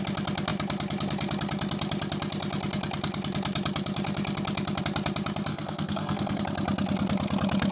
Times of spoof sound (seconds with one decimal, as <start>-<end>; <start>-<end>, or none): 5.5-6.4